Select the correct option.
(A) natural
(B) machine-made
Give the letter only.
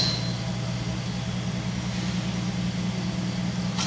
A